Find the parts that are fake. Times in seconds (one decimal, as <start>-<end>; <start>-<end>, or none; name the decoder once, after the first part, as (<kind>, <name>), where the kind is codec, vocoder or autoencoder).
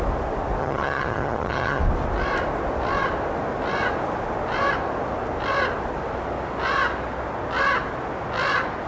0.6-1.8 (vocoder, HiFi-GAN)